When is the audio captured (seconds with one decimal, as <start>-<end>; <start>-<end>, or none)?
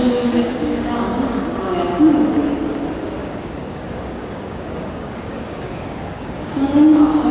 2.1-3.2